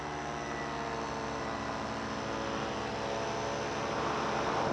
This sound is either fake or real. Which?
real